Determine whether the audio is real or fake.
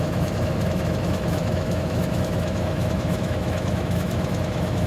fake